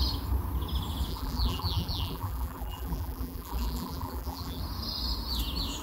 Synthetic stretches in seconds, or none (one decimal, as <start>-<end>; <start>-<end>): 1.1-4.6

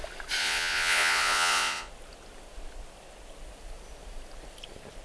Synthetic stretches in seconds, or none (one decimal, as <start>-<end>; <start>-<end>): 0.4-1.9